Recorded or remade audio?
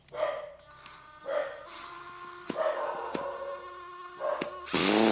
recorded